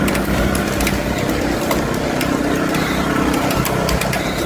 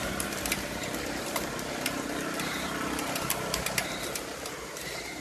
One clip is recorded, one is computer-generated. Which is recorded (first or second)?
first